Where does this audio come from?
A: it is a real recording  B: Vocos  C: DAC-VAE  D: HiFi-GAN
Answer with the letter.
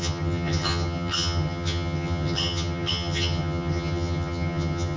D